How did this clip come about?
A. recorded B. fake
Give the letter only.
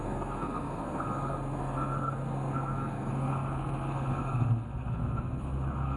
B